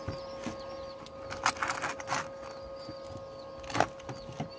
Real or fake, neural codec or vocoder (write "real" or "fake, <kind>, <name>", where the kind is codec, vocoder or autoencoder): real